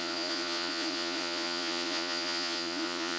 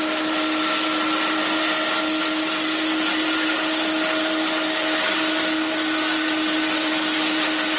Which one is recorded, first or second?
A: second